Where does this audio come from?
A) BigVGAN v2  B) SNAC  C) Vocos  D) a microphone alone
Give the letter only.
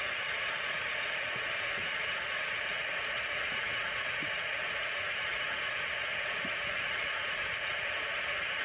C